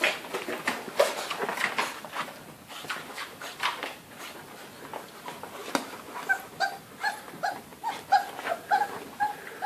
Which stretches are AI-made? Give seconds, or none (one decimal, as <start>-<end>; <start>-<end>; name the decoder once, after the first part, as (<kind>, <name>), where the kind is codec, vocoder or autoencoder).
none